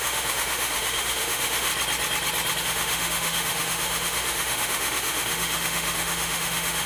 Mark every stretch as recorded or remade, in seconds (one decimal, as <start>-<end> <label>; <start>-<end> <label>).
0.0-1.7 remade; 1.7-2.6 recorded; 2.6-6.9 remade